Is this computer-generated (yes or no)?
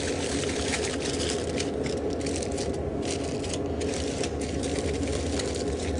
no